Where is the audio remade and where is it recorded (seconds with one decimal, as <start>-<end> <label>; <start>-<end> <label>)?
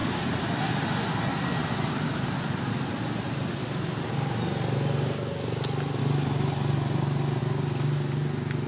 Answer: 0.0-8.7 recorded